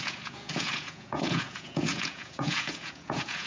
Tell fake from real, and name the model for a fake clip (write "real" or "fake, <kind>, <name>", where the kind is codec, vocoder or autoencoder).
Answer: fake, vocoder, Vocos